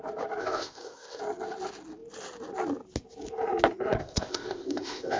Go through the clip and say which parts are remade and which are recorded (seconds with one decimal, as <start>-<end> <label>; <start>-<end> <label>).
0.0-0.4 recorded; 0.4-1.2 remade; 1.2-4.0 recorded; 4.0-5.2 remade